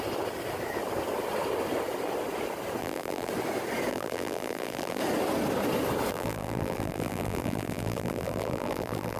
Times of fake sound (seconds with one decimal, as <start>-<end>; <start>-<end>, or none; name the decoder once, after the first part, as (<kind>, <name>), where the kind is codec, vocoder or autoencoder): 2.8-3.3 (vocoder, BigVGAN v2); 3.9-5.0; 6.1-9.2